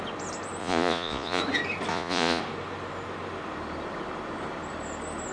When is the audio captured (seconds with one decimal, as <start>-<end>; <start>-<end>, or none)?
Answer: 0.0-0.6; 1.4-1.9; 2.4-5.3